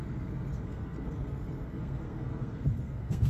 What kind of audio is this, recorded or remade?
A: remade